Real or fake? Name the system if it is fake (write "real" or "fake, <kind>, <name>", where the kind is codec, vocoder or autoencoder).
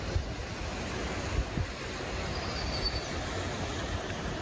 real